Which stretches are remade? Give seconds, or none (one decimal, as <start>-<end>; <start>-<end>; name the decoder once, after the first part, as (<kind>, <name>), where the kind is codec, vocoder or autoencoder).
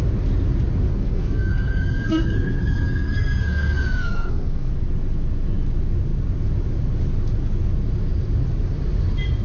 0.9-4.7 (codec, SNAC)